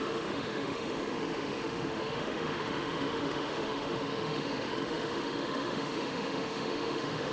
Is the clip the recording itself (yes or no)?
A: no